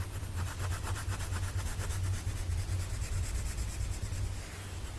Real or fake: real